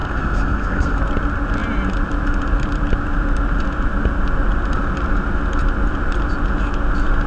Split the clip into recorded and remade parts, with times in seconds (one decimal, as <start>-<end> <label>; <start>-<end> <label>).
0.0-1.0 remade; 1.0-7.3 recorded

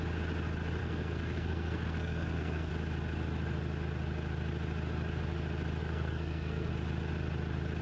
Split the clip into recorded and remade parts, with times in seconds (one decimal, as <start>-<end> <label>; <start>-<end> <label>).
0.0-0.8 recorded; 0.8-2.7 remade; 2.7-5.8 recorded; 5.8-6.7 remade; 6.7-7.8 recorded

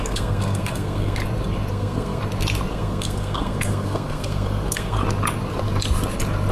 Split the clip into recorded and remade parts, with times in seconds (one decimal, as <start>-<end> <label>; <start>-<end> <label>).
0.0-1.2 remade; 1.2-1.7 recorded; 1.7-2.2 remade; 2.2-2.7 recorded; 2.7-5.0 remade; 5.0-6.5 recorded

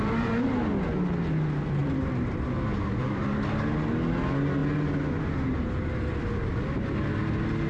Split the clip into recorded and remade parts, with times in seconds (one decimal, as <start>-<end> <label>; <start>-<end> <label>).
0.0-7.7 recorded

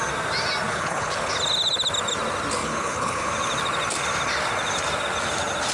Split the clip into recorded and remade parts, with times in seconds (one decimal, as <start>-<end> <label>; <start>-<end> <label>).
0.0-0.7 recorded; 0.7-1.3 remade; 1.3-2.6 recorded; 2.6-3.3 remade; 3.3-5.7 recorded

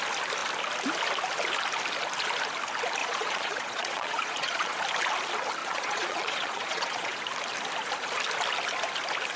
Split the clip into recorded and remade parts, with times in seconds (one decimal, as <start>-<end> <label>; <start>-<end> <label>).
0.0-3.0 recorded; 3.0-4.8 remade; 4.8-5.6 recorded; 5.6-7.2 remade; 7.2-9.4 recorded